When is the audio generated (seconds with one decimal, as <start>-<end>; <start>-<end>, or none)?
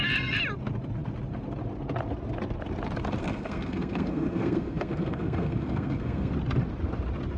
3.2-6.3